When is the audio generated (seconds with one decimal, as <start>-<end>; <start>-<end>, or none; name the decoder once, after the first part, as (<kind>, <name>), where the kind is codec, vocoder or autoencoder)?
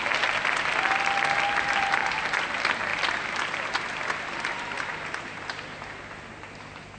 2.0-2.5 (vocoder, BigVGAN v2); 2.9-6.0